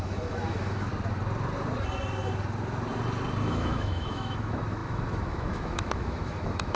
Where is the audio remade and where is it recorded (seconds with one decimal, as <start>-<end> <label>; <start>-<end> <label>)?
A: 0.0-0.9 remade; 0.9-3.5 recorded; 3.5-6.8 remade